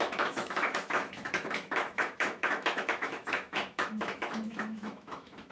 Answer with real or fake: fake